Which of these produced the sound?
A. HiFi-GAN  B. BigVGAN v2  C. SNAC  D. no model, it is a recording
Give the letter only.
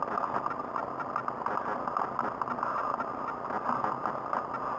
D